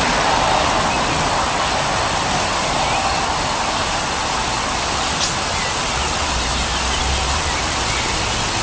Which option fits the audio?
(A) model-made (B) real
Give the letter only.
B